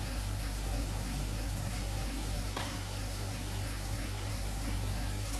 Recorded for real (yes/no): no